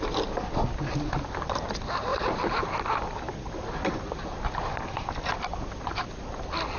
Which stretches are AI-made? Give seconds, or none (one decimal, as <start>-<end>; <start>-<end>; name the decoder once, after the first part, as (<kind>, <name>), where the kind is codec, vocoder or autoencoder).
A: none